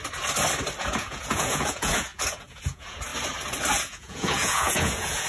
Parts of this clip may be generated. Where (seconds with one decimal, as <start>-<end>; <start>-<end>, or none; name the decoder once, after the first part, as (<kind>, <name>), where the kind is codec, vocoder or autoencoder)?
0.8-3.1 (vocoder, Vocos); 3.7-5.3